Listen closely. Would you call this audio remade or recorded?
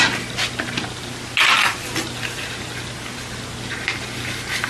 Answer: recorded